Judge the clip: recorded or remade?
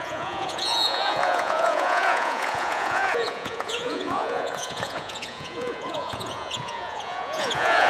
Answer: remade